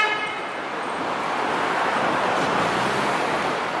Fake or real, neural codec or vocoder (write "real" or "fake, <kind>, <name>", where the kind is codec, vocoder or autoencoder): real